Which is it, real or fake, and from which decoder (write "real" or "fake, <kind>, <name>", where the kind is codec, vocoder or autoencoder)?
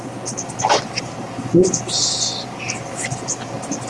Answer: real